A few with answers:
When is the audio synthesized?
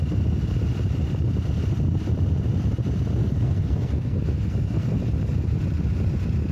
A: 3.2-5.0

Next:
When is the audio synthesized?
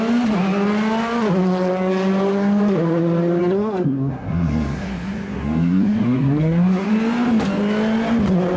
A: 3.4-6.9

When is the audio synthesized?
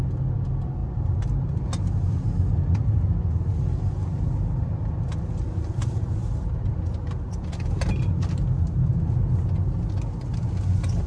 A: none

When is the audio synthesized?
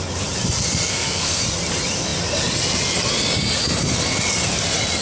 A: 0.9-1.4